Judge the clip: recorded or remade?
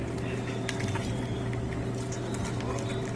recorded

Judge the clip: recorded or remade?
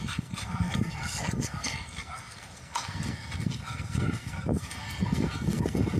remade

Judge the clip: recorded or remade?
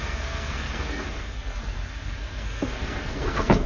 remade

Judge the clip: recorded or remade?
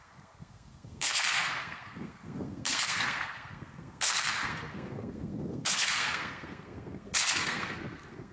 remade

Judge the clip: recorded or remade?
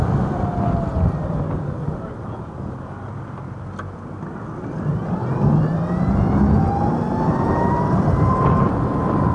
recorded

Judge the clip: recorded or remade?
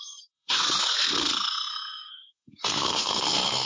remade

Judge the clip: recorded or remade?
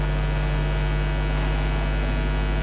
recorded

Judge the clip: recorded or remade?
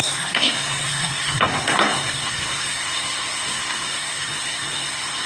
remade